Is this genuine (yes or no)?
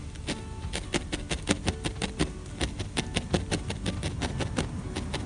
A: yes